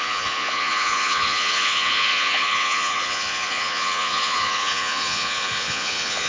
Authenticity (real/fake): fake